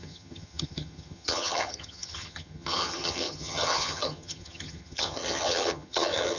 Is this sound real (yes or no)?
no